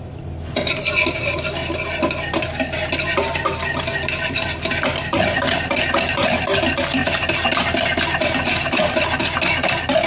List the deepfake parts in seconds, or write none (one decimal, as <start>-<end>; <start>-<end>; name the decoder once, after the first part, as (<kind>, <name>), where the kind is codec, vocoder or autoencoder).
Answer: none